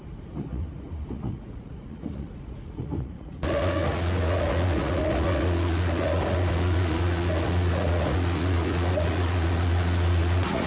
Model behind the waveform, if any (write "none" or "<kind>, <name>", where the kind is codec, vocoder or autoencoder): vocoder, Vocos